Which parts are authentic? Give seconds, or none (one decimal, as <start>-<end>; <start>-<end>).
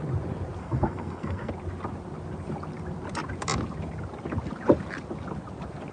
0.0-0.6; 1.5-5.9